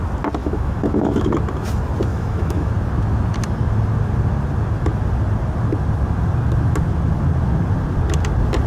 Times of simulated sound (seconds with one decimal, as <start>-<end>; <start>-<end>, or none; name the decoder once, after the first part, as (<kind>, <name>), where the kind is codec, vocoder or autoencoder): 0.4-1.3 (autoencoder, DAC-VAE); 2.1-2.7